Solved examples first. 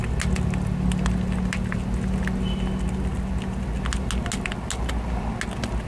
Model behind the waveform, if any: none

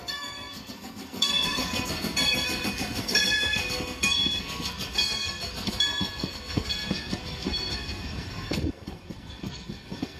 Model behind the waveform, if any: codec, SNAC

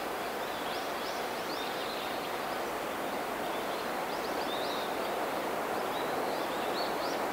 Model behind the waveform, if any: vocoder, BigVGAN v2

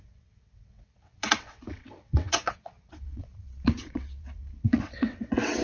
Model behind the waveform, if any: vocoder, WaveNeXt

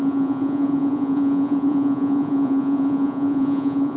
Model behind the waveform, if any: vocoder, Vocos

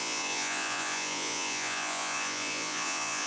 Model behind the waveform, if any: vocoder, Vocos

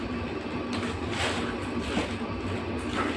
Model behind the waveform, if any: none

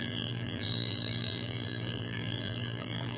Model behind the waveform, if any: vocoder, BigVGAN v2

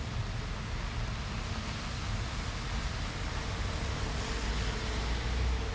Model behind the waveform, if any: none